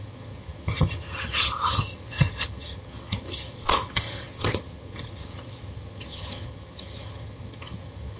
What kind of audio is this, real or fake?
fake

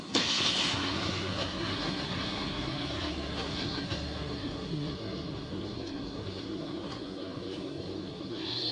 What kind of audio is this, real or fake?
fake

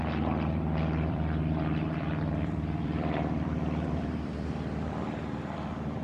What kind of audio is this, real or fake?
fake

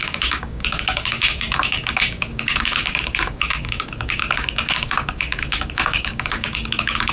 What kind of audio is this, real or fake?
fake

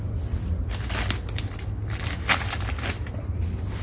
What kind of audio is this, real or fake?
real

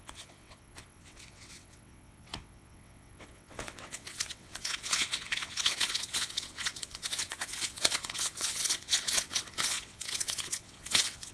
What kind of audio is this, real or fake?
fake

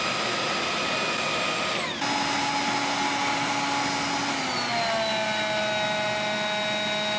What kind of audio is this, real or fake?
real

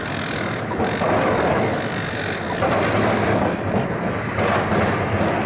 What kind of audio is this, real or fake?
real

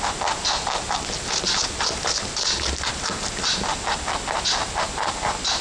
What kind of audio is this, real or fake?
real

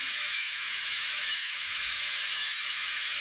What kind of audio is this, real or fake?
fake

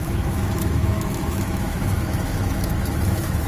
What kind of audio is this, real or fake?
fake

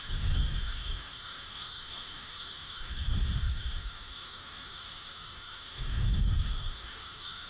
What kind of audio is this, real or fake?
fake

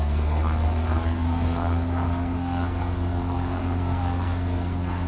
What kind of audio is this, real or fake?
fake